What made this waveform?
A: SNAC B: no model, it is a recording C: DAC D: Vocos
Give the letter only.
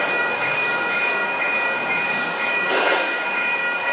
C